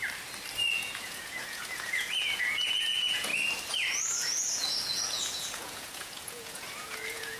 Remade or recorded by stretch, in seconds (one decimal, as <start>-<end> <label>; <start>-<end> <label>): 0.0-0.7 recorded; 0.7-3.3 remade; 3.3-4.2 recorded; 4.2-7.4 remade